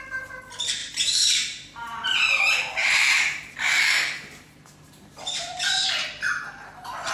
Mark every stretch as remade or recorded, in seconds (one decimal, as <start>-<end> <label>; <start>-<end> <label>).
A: 0.0-0.8 recorded; 0.8-5.1 remade; 5.1-7.1 recorded